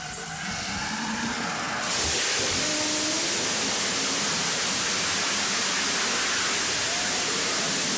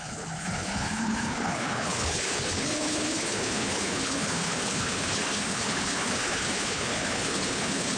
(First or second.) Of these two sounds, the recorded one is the first